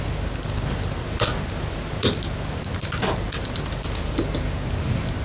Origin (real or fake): real